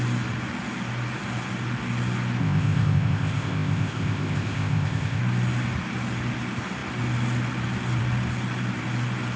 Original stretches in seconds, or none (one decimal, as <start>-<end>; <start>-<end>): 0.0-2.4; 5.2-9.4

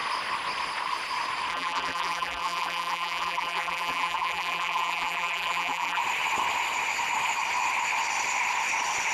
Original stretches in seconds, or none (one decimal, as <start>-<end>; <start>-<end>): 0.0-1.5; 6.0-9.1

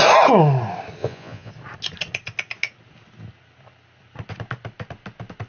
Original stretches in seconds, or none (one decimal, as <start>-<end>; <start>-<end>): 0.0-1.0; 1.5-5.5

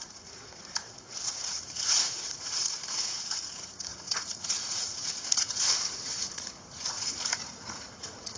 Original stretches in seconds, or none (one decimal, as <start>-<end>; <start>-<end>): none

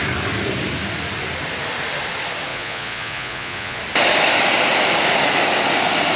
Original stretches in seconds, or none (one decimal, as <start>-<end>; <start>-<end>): 0.0-2.5; 3.8-6.2

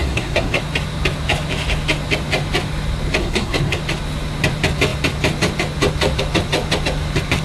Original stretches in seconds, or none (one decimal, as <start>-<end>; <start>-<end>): 0.6-3.2; 3.8-7.4